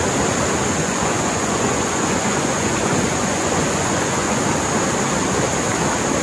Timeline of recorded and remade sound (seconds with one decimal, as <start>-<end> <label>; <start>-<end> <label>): 0.0-0.8 recorded; 0.8-4.4 remade; 4.4-6.2 recorded